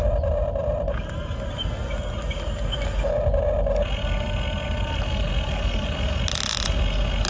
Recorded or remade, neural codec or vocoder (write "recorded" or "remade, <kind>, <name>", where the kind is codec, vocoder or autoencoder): recorded